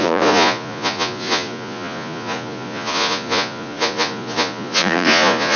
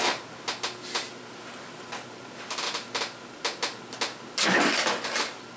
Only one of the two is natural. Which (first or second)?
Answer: second